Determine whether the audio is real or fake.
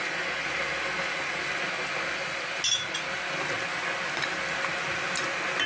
real